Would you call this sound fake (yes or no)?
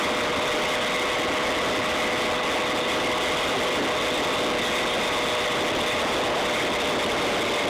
no